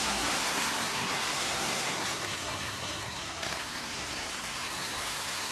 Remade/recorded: remade